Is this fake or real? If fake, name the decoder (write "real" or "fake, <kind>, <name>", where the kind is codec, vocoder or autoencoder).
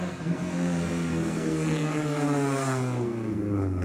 fake, codec, SNAC